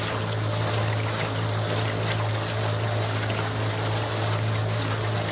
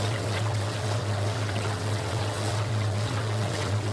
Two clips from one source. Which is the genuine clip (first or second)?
first